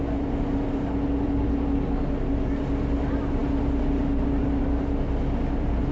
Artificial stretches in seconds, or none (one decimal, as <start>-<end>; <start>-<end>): none